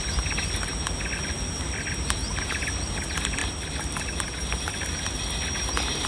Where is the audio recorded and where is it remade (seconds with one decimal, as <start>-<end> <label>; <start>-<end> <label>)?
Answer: 0.0-6.1 recorded